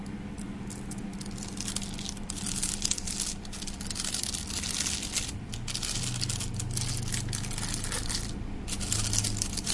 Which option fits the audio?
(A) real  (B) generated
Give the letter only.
A